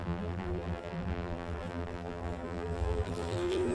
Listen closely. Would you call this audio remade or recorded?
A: remade